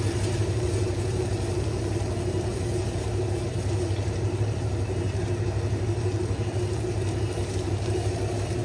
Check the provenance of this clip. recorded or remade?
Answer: remade